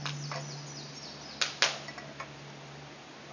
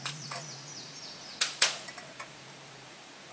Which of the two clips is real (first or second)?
first